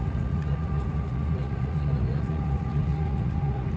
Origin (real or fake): fake